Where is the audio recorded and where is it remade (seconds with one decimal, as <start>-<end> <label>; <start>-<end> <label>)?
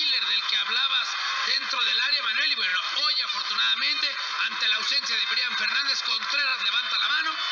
0.0-1.0 recorded; 1.0-2.2 remade; 2.2-6.5 recorded; 6.5-7.1 remade; 7.1-7.5 recorded